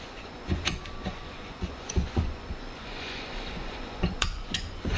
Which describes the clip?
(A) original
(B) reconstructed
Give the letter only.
B